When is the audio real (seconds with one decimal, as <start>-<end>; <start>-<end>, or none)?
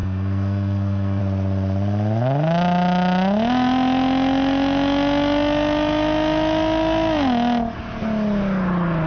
1.2-9.1